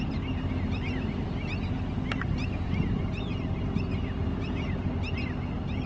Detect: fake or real real